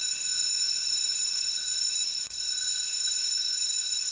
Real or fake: fake